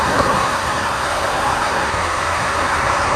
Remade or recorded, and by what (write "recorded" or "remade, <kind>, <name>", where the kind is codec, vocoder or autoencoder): remade, codec, SNAC